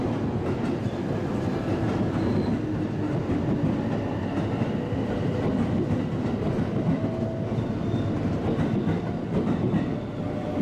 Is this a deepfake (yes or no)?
no